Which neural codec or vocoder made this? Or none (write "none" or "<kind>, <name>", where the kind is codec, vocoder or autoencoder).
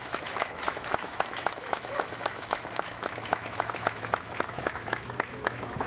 autoencoder, DAC-VAE